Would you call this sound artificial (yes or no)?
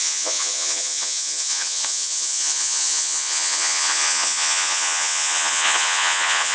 yes